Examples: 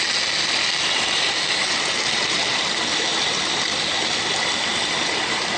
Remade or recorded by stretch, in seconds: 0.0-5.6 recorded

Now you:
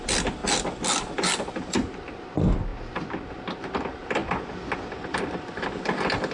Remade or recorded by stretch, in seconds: 0.0-6.3 recorded

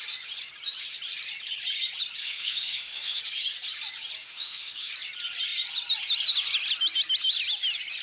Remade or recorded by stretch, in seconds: 0.0-2.2 recorded; 2.2-3.2 remade; 3.2-4.2 recorded; 4.2-4.9 remade; 4.9-8.0 recorded

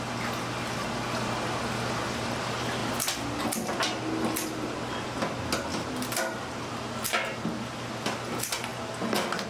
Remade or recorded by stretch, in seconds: 0.0-9.5 recorded

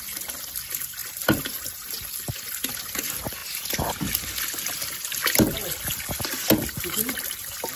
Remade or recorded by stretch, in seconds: 0.0-7.8 recorded

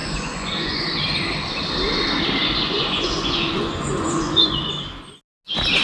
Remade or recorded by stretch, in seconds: 0.0-0.8 remade; 0.8-2.4 recorded; 2.4-4.7 remade; 4.7-5.8 recorded